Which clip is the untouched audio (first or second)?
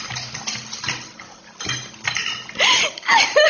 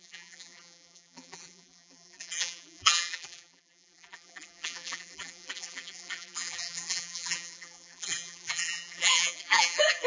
first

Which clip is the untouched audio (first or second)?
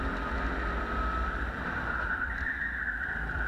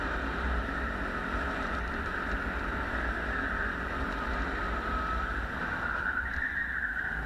first